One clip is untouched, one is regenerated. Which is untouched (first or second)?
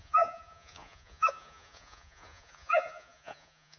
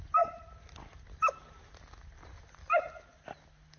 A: second